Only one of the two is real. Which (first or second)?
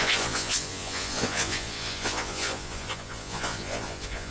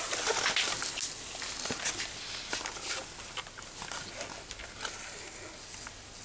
second